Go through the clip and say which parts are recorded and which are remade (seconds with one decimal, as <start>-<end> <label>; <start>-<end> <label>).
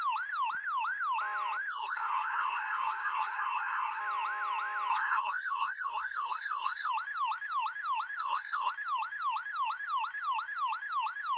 0.0-1.7 recorded; 1.7-4.0 remade; 4.0-4.9 recorded; 4.9-6.9 remade; 6.9-8.2 recorded; 8.2-8.7 remade; 8.7-11.4 recorded